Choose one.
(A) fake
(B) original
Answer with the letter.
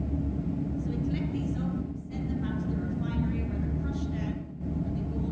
B